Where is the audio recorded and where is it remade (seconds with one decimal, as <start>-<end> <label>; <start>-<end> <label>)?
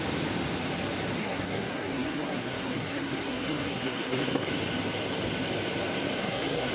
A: 0.0-1.2 recorded; 1.2-4.5 remade; 4.5-6.2 recorded; 6.2-6.7 remade